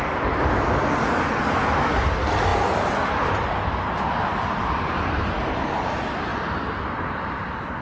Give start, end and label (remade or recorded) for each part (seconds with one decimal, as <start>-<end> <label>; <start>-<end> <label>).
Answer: 0.0-7.8 recorded